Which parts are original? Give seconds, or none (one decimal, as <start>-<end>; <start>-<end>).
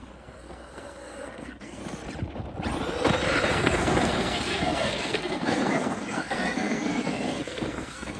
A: 1.8-3.5